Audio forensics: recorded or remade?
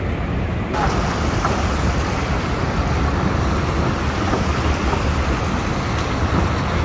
recorded